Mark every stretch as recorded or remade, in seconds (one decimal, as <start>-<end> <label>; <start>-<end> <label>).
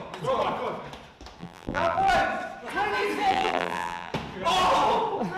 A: 0.0-1.4 recorded; 1.4-2.1 remade; 2.1-3.3 recorded; 3.3-4.1 remade; 4.1-5.4 recorded